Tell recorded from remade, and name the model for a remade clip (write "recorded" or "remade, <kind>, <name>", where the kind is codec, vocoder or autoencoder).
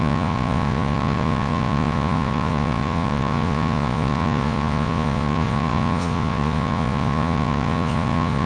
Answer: remade, vocoder, Vocos